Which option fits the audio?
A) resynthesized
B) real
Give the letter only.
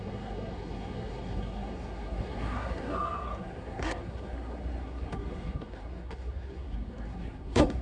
A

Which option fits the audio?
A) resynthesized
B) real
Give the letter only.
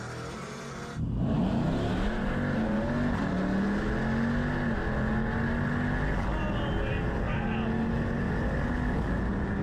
B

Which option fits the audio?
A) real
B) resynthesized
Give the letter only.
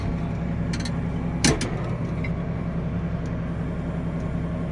A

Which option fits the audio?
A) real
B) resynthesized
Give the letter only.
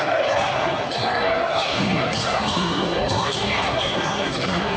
B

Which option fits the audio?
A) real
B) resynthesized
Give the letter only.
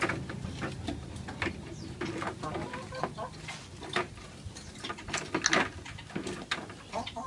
A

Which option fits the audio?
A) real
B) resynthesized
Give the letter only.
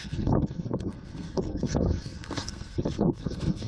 B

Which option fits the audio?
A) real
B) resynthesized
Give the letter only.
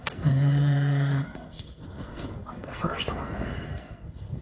B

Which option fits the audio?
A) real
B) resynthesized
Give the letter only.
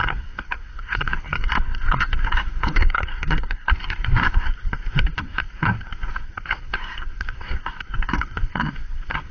B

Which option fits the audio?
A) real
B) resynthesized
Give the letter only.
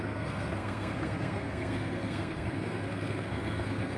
B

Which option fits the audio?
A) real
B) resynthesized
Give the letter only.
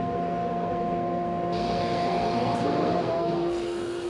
B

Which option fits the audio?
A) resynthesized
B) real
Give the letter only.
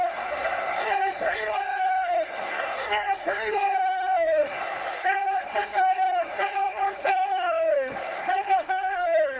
A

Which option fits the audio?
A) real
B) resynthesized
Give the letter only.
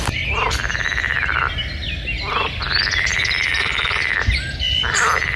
A